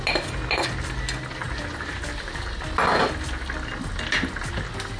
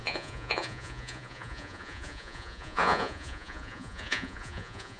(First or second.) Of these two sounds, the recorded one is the first